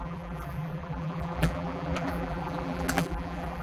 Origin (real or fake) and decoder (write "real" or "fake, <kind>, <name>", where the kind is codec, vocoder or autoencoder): fake, vocoder, BigVGAN v2